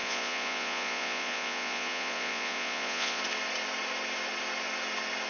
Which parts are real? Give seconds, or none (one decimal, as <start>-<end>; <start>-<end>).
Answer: 3.2-5.3